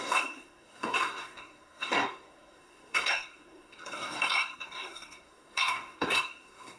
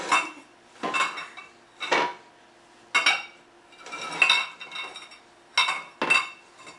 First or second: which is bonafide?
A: second